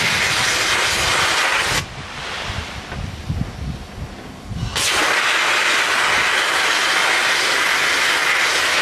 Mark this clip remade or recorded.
recorded